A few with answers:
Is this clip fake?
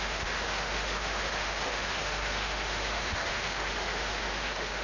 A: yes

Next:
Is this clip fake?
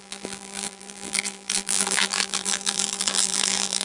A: yes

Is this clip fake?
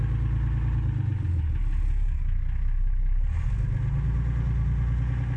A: no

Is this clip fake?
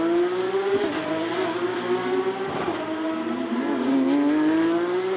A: no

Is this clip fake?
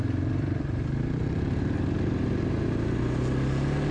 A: no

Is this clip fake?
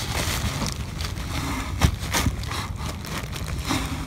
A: no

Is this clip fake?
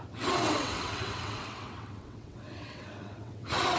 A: yes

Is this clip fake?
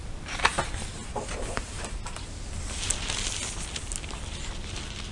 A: no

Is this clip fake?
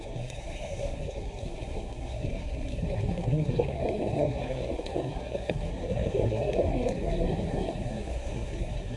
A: yes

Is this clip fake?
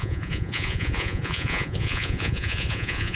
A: yes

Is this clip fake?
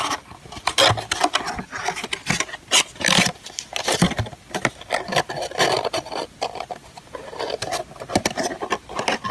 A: no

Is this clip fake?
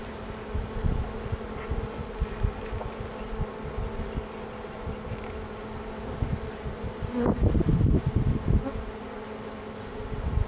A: no